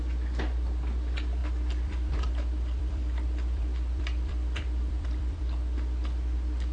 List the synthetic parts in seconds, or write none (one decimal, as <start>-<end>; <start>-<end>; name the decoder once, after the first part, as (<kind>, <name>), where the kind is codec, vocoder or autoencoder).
1.4-5.4 (vocoder, BigVGAN v2)